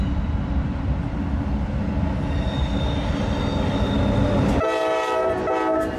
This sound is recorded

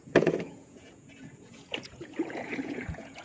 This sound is remade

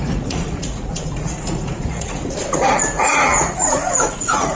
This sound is remade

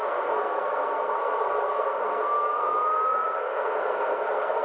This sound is remade